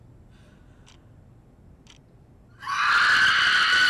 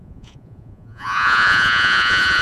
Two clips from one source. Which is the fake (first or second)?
second